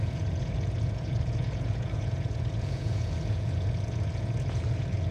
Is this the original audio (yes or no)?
no